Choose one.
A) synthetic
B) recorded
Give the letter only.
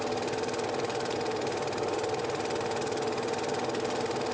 A